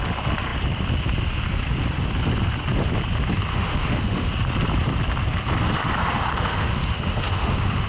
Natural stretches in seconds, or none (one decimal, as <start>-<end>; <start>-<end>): 0.0-3.5; 4.3-6.0